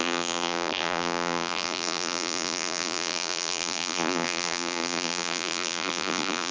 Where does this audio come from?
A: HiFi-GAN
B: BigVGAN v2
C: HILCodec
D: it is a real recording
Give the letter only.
B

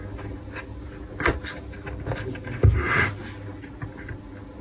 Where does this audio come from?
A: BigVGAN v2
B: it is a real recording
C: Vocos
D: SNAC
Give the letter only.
B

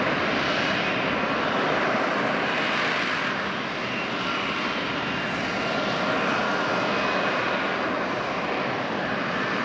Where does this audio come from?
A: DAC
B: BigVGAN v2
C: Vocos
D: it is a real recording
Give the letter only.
D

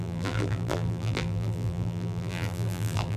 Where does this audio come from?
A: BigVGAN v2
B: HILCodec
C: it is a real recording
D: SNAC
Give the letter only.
A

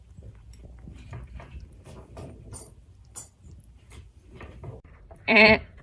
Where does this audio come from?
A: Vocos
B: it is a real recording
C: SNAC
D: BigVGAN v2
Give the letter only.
D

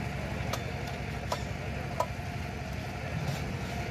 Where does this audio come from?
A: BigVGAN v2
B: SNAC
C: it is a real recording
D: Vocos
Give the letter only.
C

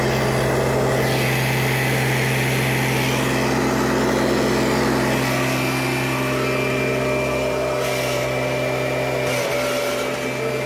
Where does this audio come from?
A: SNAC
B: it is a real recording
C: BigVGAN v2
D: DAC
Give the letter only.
B